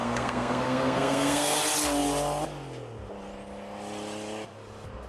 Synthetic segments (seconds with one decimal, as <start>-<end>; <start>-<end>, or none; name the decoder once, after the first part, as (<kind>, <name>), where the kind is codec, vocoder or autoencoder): 0.0-1.6 (codec, SNAC)